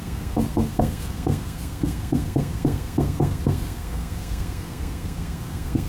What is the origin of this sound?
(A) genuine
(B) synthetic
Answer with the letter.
B